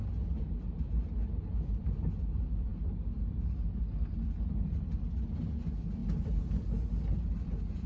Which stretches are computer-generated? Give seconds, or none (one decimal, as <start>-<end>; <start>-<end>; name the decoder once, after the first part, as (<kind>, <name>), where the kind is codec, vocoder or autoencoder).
none